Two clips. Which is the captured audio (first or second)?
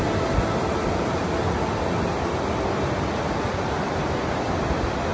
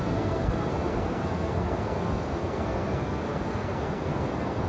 first